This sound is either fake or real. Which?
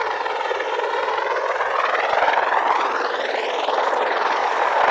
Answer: real